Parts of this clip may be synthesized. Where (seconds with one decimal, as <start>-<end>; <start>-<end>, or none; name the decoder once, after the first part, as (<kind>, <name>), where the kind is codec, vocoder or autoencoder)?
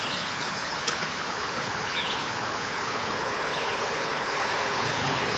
0.0-5.4 (codec, HILCodec)